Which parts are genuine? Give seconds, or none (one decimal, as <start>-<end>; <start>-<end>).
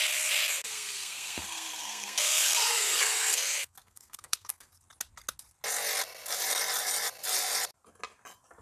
0.0-0.4; 4.7-8.6